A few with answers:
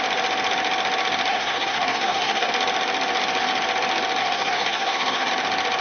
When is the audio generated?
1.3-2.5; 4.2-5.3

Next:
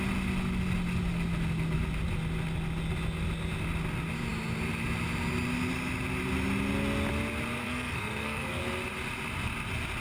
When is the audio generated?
7.6-8.6

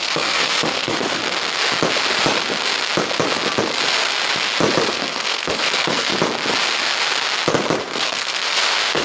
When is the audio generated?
0.0-1.2; 4.9-6.1; 7.8-9.0